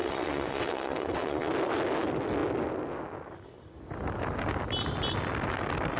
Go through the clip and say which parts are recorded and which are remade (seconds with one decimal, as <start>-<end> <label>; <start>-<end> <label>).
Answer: 0.0-1.5 remade; 1.5-6.0 recorded